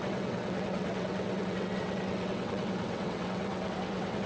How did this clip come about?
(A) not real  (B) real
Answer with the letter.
A